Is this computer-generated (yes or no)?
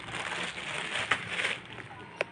no